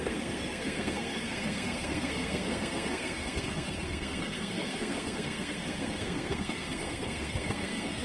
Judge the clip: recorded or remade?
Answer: remade